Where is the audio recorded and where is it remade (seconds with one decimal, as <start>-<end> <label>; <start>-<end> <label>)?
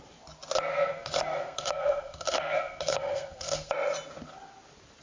0.0-0.7 recorded; 0.7-3.7 remade; 3.7-5.0 recorded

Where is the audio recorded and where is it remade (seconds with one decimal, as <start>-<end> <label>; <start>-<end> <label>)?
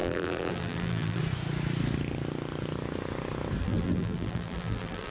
0.0-1.2 remade; 1.2-3.6 recorded; 3.6-5.1 remade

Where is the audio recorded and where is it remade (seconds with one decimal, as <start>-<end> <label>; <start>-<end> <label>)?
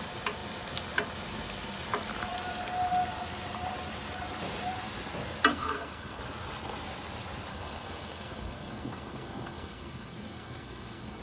0.0-5.5 recorded; 5.5-6.2 remade; 6.2-7.5 recorded; 7.5-11.2 remade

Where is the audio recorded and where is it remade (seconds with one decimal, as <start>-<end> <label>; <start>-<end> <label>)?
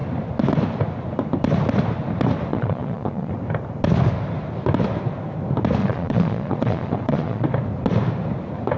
0.0-2.5 recorded; 2.5-3.3 remade; 3.3-5.8 recorded; 5.8-7.5 remade; 7.5-8.8 recorded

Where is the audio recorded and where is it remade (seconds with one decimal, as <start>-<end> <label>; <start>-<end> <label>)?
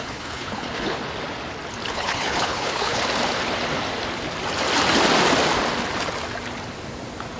0.0-1.0 remade; 1.0-1.9 recorded; 1.9-3.0 remade; 3.0-7.4 recorded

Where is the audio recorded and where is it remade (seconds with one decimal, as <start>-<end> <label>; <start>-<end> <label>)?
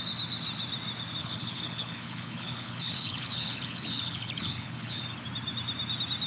0.0-1.2 recorded; 1.2-5.0 remade; 5.0-6.3 recorded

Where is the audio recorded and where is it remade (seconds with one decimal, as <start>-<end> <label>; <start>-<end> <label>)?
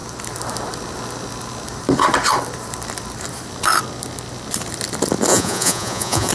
0.0-5.3 recorded; 5.3-6.3 remade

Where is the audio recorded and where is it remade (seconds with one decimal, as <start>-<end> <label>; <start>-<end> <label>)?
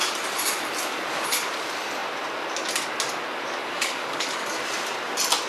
0.0-3.6 recorded; 3.6-4.6 remade; 4.6-5.5 recorded